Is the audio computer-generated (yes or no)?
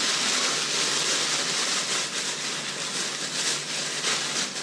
no